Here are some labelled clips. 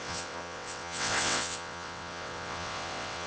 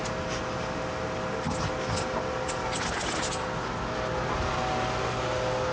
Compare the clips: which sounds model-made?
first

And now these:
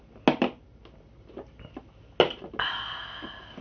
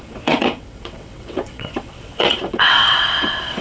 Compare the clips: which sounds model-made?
second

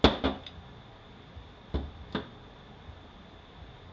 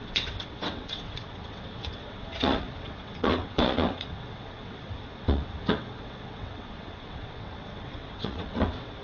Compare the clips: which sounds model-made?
second